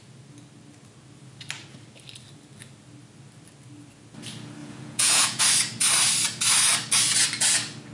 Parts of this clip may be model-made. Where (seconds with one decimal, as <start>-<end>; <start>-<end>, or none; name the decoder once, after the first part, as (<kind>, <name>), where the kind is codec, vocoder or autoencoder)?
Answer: 4.6-5.4 (vocoder, Vocos)